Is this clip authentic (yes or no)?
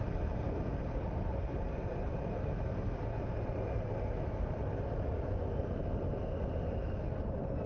yes